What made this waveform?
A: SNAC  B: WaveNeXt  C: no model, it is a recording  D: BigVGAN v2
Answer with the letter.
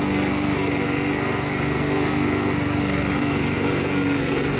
A